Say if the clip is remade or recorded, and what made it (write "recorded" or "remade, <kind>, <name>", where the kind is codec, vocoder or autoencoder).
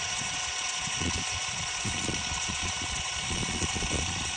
remade, vocoder, Vocos